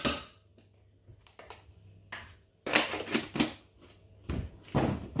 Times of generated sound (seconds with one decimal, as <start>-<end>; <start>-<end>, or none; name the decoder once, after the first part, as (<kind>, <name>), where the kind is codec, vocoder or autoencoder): none